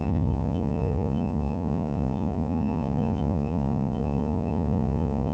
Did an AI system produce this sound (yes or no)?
yes